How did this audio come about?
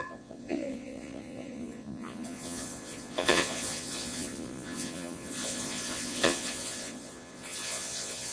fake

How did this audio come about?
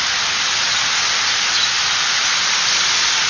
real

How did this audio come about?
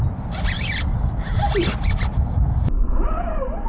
real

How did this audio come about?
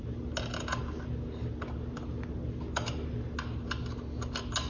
real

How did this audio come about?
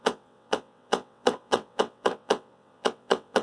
fake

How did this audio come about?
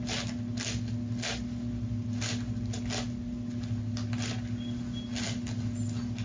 real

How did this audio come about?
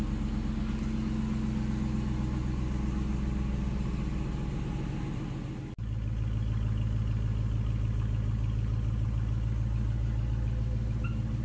real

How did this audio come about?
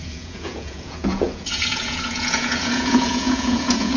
fake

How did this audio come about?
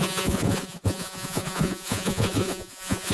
fake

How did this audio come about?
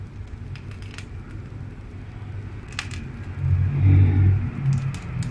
real